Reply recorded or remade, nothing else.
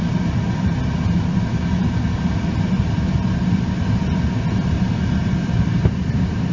recorded